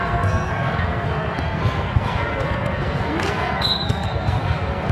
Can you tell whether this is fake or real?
fake